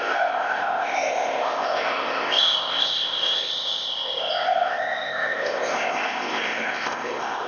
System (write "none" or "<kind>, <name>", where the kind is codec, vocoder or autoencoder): codec, ZipCodec